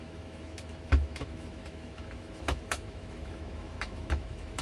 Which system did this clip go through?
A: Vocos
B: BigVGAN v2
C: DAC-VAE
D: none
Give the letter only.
C